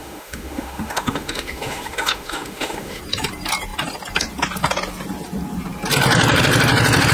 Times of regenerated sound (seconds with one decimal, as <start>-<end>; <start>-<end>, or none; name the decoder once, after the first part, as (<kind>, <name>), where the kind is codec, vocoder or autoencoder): 0.0-3.0 (autoencoder, DAC-VAE)